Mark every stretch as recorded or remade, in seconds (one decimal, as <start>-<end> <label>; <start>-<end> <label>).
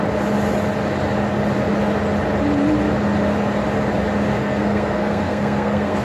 0.0-4.4 recorded; 4.4-6.0 remade